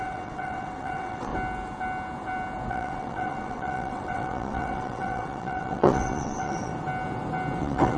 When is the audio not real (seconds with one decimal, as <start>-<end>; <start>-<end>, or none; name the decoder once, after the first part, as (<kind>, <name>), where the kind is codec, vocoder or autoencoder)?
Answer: 0.0-1.3 (vocoder, WaveNeXt); 2.7-6.7; 7.6-8.0